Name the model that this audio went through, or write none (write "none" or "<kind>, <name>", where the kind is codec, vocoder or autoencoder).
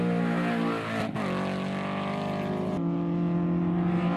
none